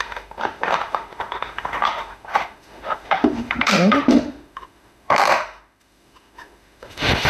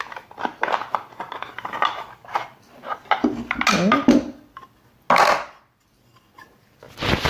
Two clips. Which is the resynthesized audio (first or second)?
first